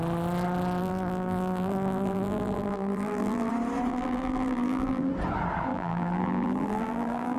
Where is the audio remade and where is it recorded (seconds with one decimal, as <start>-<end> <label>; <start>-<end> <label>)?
0.0-0.8 recorded; 0.8-3.5 remade; 3.5-3.9 recorded; 3.9-5.1 remade; 5.1-5.7 recorded; 5.7-7.4 remade